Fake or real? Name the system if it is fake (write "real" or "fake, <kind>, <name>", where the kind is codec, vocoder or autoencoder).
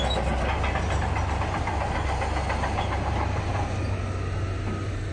real